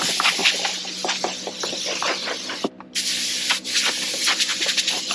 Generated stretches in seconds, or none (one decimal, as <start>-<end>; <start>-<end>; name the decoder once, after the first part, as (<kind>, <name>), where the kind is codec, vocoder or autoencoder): none